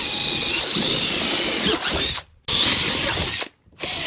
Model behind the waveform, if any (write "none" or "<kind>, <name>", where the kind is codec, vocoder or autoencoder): none